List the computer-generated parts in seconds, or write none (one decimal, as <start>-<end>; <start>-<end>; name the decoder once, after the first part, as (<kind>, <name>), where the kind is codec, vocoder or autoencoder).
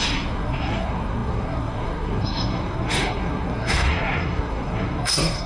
0.0-5.5 (codec, SNAC)